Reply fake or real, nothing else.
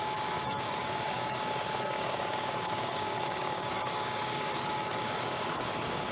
fake